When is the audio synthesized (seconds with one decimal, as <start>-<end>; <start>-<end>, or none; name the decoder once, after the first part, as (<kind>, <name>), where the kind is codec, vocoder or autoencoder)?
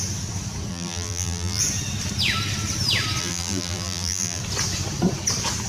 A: 0.7-1.6 (vocoder, BigVGAN v2); 3.2-4.4